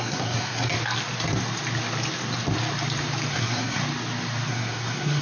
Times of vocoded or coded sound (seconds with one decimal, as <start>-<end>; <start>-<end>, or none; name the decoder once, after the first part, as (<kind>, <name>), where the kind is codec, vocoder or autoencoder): 0.0-0.7 (codec, SNAC); 3.3-3.8; 4.5-5.2